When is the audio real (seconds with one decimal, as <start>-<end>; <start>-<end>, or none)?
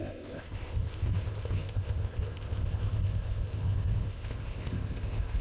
none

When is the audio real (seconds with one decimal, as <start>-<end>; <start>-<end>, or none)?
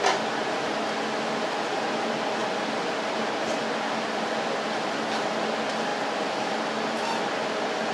0.0-7.9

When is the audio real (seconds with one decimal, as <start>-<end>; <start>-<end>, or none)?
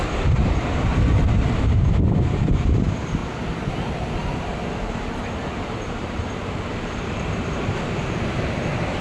0.9-2.4; 3.2-3.7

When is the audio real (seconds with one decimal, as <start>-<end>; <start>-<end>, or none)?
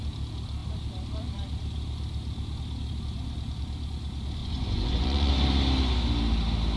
0.0-4.4; 5.3-6.8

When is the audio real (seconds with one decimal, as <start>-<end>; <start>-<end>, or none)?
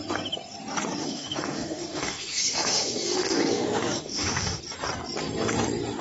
0.0-1.0; 4.6-6.0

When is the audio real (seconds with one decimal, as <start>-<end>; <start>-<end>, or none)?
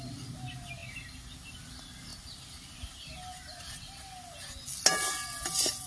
0.0-5.9